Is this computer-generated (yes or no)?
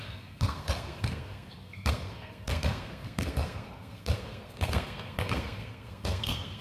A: yes